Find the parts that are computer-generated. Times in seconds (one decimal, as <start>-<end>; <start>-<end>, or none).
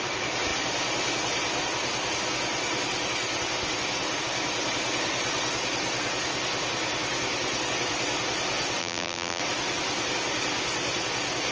8.8-9.4